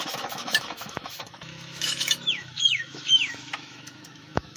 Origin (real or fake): fake